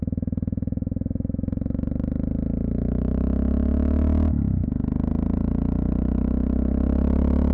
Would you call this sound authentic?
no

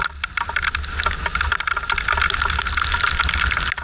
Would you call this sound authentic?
yes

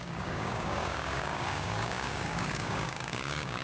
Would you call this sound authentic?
no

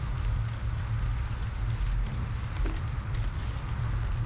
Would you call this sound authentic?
yes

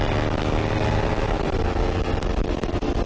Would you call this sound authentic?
yes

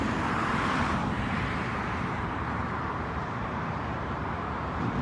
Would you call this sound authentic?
no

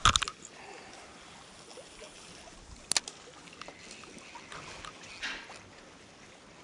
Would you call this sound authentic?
yes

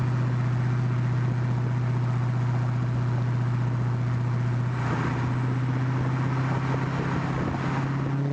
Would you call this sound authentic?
yes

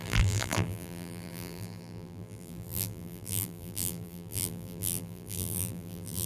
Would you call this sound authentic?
no